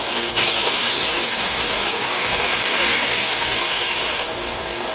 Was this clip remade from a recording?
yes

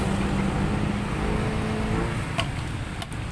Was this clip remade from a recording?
no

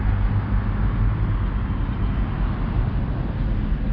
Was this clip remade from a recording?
no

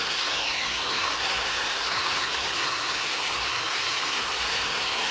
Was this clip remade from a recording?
yes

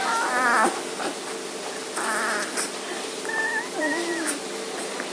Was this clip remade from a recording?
no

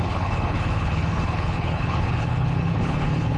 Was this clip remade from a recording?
yes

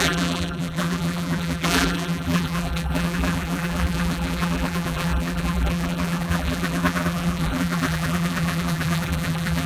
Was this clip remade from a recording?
yes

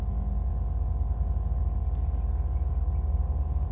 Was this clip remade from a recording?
no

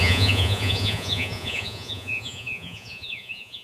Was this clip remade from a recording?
yes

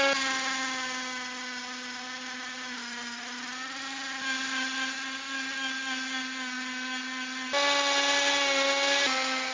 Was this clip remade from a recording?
no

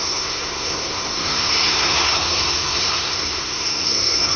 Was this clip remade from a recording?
yes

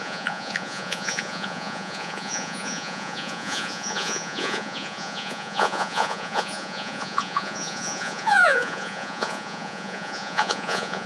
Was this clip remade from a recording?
yes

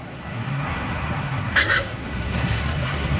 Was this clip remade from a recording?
yes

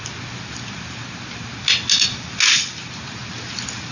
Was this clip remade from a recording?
no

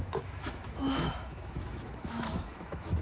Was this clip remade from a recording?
yes